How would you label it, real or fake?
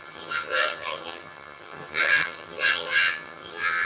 fake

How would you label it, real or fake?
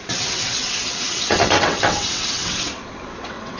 fake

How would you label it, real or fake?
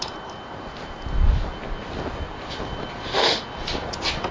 real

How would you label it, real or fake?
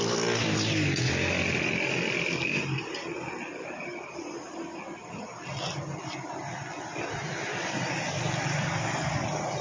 real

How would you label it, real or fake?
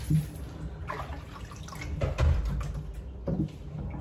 real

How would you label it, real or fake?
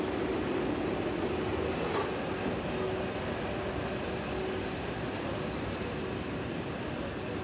real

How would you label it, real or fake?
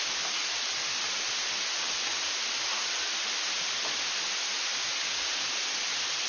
real